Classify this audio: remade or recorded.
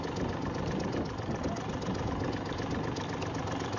recorded